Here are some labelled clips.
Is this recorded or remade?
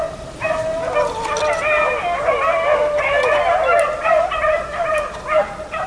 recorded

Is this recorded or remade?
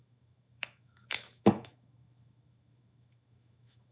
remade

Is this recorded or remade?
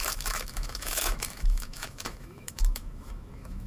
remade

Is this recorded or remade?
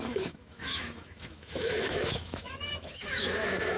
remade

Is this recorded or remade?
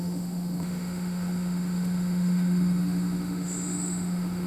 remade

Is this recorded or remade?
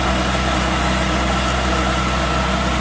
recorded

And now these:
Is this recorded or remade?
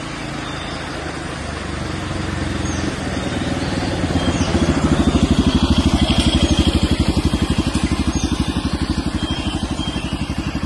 recorded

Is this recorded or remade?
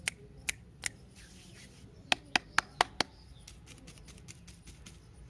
recorded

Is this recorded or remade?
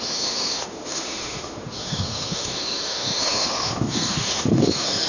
remade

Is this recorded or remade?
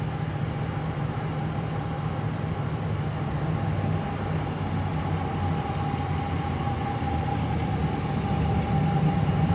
recorded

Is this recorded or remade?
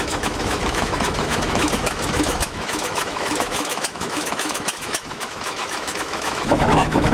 remade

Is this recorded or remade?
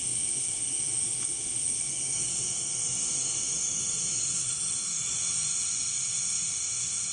remade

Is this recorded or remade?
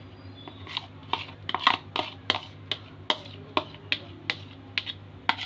recorded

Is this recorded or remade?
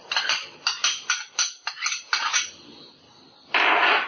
recorded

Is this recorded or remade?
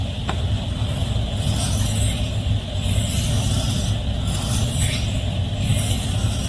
recorded